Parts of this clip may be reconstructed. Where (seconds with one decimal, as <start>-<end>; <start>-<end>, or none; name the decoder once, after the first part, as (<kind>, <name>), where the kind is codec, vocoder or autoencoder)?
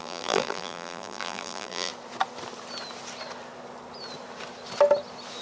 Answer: 0.0-1.9 (vocoder, BigVGAN v2)